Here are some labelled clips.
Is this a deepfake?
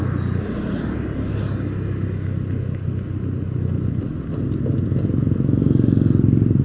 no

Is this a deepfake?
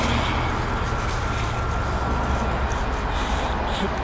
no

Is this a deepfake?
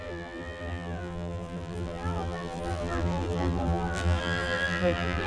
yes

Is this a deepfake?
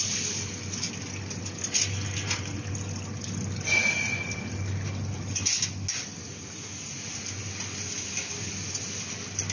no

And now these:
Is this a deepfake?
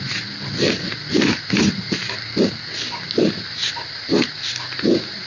no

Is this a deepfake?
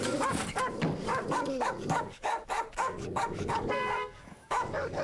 yes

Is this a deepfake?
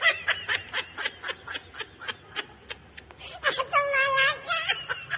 no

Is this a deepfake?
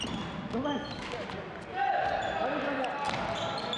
no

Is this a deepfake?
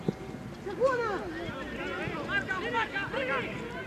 no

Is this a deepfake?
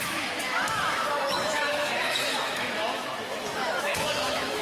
yes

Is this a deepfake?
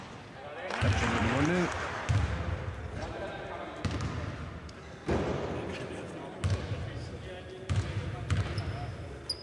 no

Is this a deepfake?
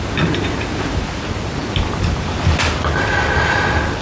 no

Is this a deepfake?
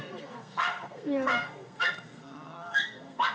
yes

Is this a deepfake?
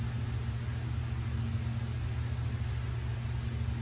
no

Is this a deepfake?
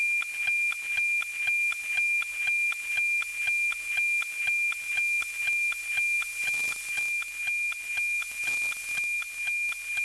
no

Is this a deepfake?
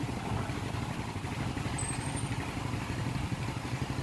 no